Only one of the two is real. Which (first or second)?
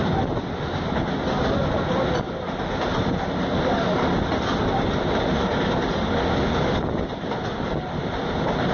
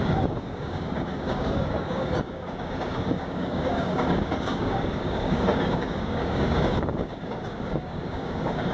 first